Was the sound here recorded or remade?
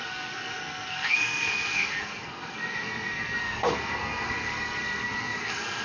remade